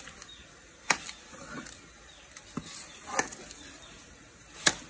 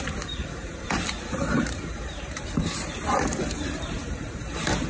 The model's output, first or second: second